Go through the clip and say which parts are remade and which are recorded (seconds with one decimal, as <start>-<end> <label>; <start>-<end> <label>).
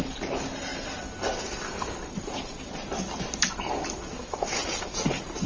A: 0.0-5.5 recorded